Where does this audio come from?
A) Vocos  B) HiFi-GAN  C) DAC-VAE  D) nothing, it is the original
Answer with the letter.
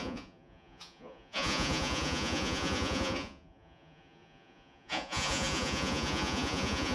A